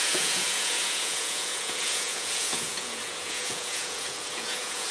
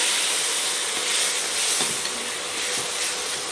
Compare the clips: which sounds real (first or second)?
second